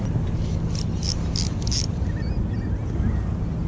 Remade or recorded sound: recorded